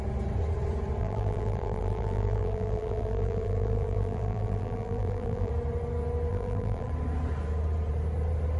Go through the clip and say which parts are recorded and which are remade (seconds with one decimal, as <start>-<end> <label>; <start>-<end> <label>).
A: 0.0-1.0 recorded; 1.0-5.5 remade; 5.5-6.3 recorded; 6.3-6.9 remade; 6.9-8.6 recorded